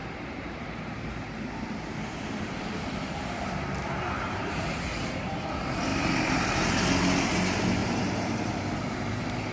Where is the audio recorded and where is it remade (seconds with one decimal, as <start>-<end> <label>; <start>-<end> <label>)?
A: 0.0-4.7 remade; 4.7-5.9 recorded; 5.9-6.7 remade; 6.7-7.8 recorded; 7.8-8.6 remade; 8.6-9.5 recorded